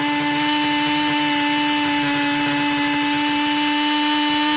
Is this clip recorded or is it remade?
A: recorded